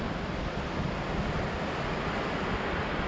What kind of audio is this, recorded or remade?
recorded